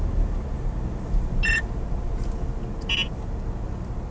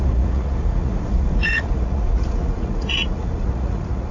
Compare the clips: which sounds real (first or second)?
first